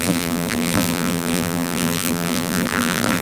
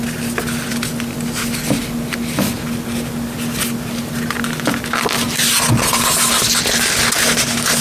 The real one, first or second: second